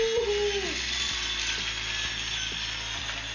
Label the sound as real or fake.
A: real